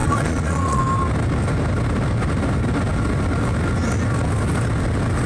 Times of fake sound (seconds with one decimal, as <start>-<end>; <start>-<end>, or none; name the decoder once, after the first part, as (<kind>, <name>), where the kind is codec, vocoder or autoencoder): 0.0-0.8 (vocoder, Vocos)